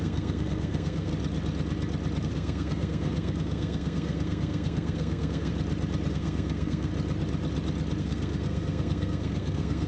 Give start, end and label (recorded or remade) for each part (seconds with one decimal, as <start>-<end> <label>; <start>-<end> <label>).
0.0-1.1 remade; 1.1-2.2 recorded; 2.2-5.5 remade; 5.5-6.1 recorded; 6.1-6.9 remade; 6.9-8.0 recorded; 8.0-9.9 remade